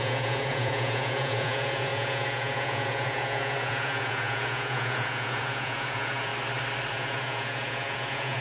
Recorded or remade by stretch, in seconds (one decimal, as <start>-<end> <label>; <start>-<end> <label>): 0.0-6.3 remade; 6.3-6.9 recorded; 6.9-8.4 remade